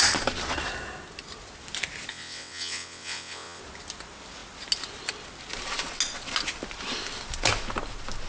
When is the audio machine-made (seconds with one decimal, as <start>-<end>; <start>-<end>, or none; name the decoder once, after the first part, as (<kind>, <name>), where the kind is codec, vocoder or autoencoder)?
2.1-3.6 (vocoder, WaveNeXt)